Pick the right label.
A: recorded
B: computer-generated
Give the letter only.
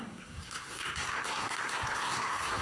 B